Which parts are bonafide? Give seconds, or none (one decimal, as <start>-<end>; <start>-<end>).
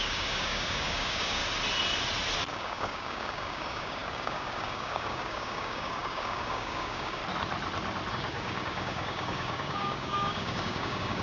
1.4-2.5; 7.2-8.1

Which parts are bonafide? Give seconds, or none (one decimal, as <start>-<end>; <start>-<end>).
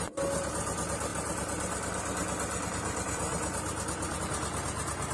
0.0-5.1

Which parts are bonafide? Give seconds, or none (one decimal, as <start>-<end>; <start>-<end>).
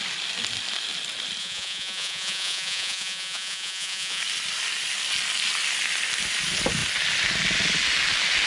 0.0-1.4; 4.2-8.5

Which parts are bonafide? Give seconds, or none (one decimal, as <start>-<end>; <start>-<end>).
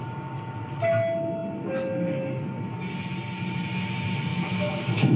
0.0-4.3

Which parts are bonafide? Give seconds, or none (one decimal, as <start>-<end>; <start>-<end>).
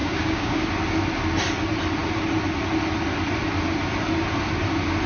0.6-5.1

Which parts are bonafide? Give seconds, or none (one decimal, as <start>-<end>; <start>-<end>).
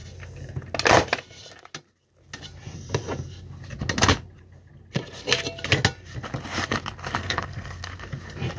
0.0-7.2; 7.9-8.6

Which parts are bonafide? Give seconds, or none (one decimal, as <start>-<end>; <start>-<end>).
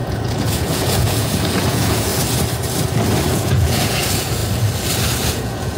2.1-3.3; 4.4-5.3